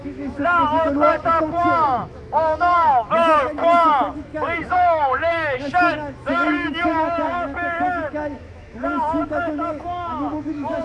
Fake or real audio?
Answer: fake